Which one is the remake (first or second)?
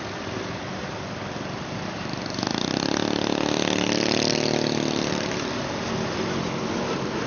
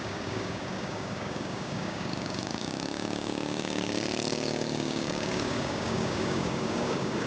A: second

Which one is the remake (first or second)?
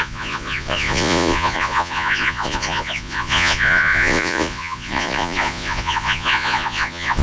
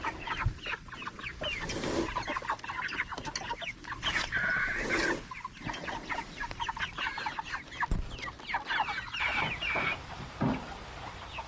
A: first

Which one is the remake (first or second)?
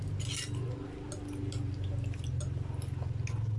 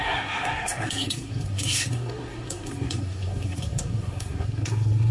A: second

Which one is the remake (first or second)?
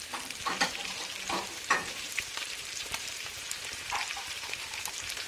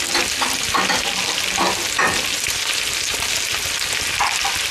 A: first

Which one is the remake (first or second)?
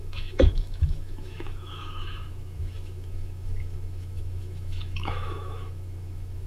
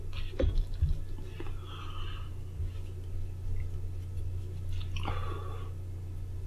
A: first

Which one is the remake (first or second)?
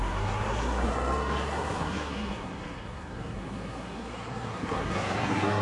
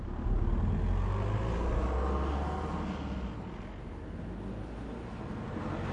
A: first